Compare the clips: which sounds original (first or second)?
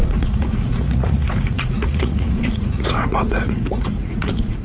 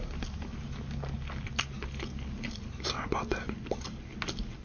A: second